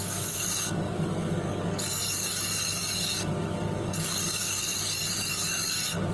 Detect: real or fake fake